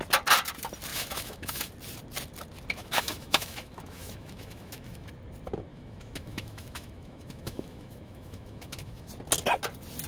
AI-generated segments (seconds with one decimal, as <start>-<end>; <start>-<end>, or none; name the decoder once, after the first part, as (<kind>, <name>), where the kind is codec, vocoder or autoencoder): 0.9-1.7 (autoencoder, DAC-VAE); 2.8-5.1; 5.7-9.1